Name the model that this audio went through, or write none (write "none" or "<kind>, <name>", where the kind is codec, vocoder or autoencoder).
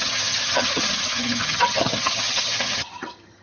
vocoder, HiFi-GAN